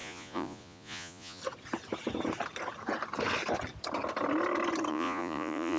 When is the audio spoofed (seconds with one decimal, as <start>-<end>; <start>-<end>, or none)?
0.0-1.4; 4.9-5.8